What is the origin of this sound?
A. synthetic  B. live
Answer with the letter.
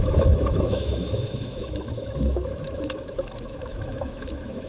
A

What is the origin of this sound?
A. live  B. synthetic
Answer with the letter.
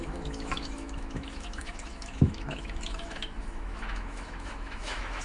B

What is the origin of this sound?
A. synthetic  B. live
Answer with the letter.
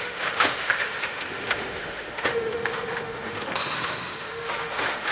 A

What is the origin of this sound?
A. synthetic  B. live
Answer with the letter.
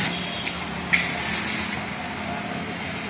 B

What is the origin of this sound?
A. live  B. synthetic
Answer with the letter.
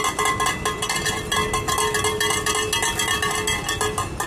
A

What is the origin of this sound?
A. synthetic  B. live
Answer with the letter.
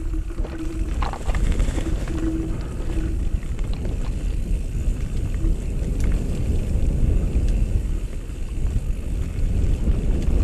B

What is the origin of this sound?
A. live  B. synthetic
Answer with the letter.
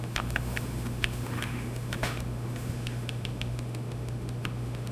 B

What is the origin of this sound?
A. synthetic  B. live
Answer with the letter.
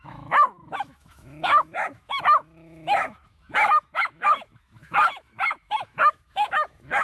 A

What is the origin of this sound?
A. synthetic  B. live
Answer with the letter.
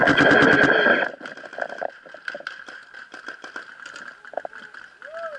B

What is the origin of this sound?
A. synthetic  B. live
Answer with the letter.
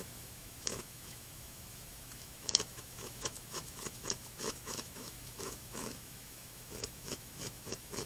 A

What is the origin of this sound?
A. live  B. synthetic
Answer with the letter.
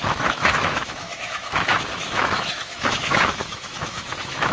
B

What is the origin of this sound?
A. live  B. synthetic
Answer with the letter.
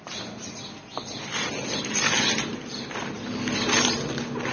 A